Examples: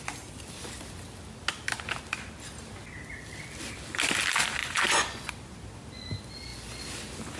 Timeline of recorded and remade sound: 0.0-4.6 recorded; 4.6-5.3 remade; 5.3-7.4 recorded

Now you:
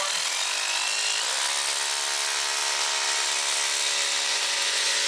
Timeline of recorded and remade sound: 0.0-4.3 recorded; 4.3-5.1 remade

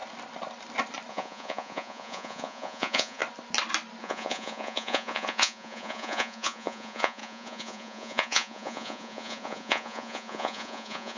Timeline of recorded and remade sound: 0.0-1.1 recorded; 1.1-3.2 remade; 3.2-4.0 recorded; 4.0-11.2 remade

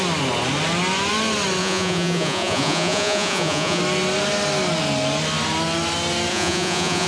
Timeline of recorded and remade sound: 0.0-1.6 recorded; 1.6-3.8 remade; 3.8-6.3 recorded; 6.3-7.1 remade